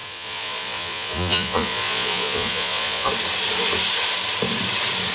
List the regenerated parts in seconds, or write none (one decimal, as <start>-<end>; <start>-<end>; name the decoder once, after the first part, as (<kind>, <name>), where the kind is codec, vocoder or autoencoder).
0.0-3.1 (vocoder, Vocos)